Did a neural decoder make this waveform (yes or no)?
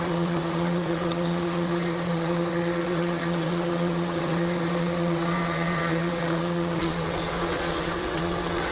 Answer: yes